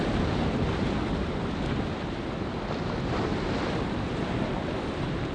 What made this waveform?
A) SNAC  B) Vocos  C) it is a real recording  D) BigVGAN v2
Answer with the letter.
D